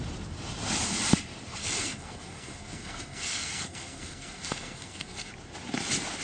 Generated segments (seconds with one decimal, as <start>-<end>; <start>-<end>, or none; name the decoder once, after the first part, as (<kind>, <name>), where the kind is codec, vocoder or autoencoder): 1.6-5.3 (codec, SNAC)